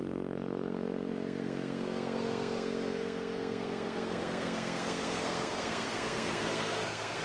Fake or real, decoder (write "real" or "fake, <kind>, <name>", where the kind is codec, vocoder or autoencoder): fake, codec, SNAC